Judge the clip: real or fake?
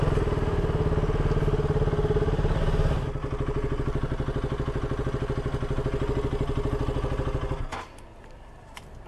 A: real